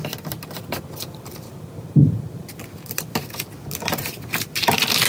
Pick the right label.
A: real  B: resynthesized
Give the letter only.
A